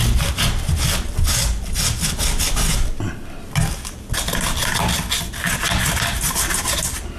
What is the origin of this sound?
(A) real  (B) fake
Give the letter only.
A